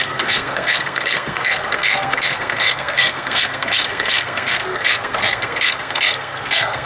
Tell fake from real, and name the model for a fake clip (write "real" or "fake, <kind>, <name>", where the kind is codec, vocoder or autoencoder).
fake, codec, SNAC